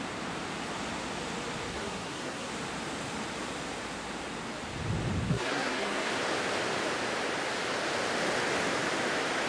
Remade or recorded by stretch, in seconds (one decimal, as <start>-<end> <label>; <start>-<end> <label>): 0.0-1.7 recorded; 1.7-2.5 remade; 2.5-5.3 recorded; 5.3-6.1 remade; 6.1-9.5 recorded